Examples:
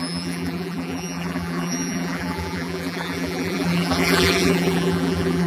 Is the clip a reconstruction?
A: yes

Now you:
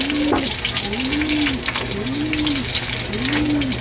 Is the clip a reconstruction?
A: no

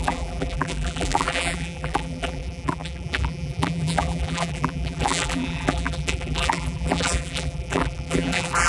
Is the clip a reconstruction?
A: yes